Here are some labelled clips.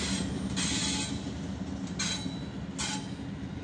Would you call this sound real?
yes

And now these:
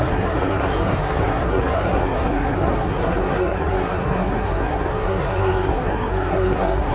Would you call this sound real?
no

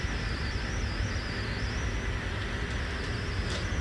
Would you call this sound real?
yes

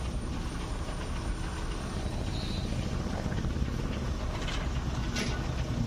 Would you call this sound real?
yes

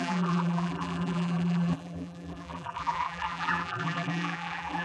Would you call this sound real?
no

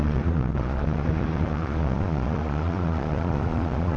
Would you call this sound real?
no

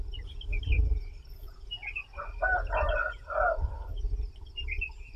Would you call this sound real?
yes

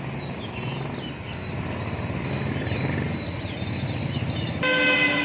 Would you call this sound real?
yes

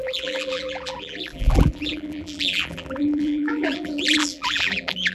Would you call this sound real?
no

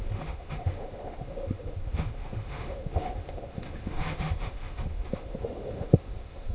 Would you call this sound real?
no